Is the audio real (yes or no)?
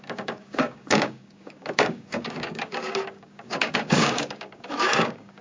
no